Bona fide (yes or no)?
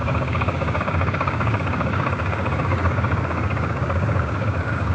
no